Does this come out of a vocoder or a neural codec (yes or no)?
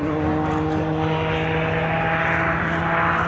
no